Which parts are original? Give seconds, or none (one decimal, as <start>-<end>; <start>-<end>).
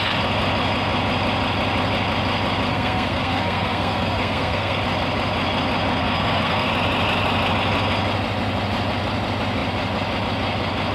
0.0-2.7; 4.8-6.0; 6.7-10.9